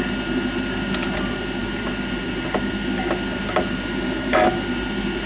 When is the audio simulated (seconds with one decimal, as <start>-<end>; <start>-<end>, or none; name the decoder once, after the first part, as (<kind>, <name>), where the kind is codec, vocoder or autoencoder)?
none